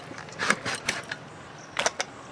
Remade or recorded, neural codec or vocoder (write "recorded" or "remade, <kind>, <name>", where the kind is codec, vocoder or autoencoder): recorded